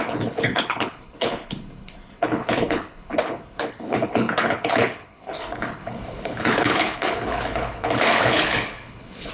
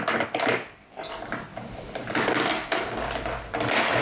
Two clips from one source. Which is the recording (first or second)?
second